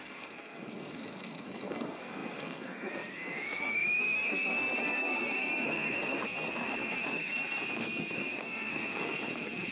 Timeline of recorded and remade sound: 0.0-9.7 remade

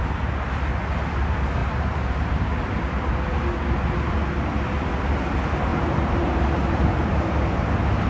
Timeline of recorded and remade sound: 0.0-1.6 recorded; 1.6-2.4 remade; 2.4-5.7 recorded; 5.7-7.3 remade; 7.3-8.1 recorded

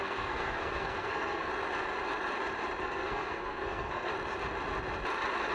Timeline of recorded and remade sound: 0.0-1.5 remade; 1.5-2.8 recorded; 2.8-4.1 remade; 4.1-5.5 recorded

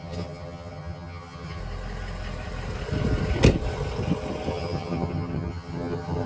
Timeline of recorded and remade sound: 0.0-1.6 remade; 1.6-4.5 recorded; 4.5-6.3 remade

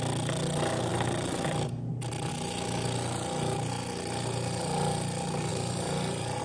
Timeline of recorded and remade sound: 0.0-5.5 recorded; 5.5-6.4 remade